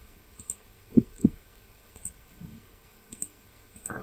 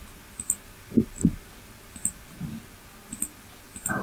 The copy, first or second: first